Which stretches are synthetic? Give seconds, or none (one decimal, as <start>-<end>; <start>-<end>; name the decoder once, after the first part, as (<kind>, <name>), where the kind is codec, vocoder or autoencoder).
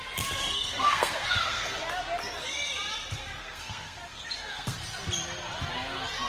0.4-1.8 (codec, SNAC); 3.4-4.8